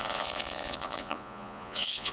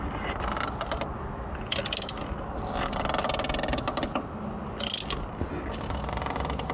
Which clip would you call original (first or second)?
second